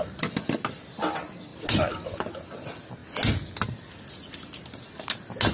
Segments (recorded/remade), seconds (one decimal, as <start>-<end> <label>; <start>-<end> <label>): 0.0-5.5 recorded